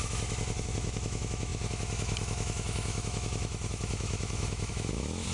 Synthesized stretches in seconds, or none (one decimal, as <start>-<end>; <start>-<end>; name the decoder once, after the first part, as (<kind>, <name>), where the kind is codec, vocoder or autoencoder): 0.0-5.3 (autoencoder, DAC-VAE)